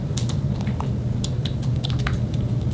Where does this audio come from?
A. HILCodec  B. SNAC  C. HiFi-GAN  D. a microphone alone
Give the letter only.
D